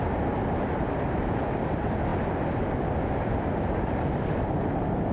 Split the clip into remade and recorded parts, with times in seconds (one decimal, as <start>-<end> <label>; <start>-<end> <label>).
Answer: 0.0-5.1 recorded